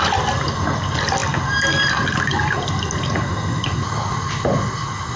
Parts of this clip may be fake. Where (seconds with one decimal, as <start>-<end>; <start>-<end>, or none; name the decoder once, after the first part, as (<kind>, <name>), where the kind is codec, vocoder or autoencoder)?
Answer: none